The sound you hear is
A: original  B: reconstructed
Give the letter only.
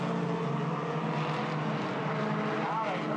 A